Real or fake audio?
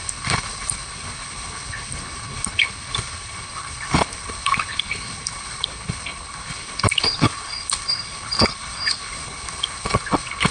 fake